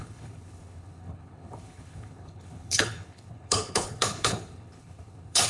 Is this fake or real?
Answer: fake